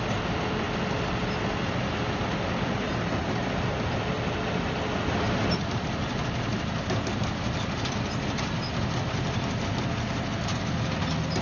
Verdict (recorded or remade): recorded